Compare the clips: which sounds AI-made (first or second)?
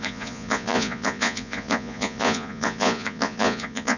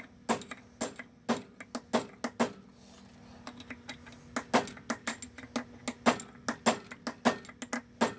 first